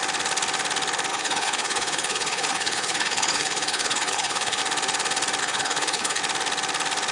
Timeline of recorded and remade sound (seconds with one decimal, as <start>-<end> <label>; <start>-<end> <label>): 0.0-1.1 recorded; 1.1-4.6 remade; 4.6-5.4 recorded; 5.4-6.2 remade; 6.2-7.1 recorded